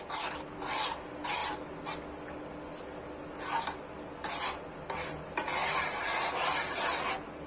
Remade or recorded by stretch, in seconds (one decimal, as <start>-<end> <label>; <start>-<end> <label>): 0.0-7.5 recorded